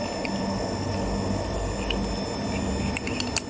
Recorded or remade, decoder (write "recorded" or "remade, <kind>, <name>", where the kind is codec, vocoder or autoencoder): recorded